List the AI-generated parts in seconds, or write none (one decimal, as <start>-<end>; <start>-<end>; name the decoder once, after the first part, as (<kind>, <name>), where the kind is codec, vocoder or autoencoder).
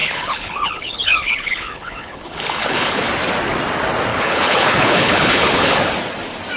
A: 0.0-3.1 (codec, HILCodec); 4.1-5.8